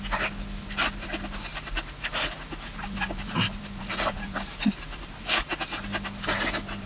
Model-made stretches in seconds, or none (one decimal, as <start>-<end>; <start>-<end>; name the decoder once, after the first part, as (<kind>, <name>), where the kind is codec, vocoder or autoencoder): 1.5-5.6 (vocoder, BigVGAN v2)